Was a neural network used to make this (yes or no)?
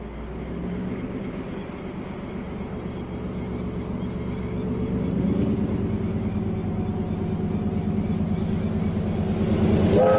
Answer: no